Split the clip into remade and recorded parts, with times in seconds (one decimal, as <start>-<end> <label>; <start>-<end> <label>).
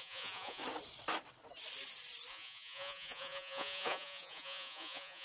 0.0-0.6 remade; 0.6-2.3 recorded; 2.3-5.2 remade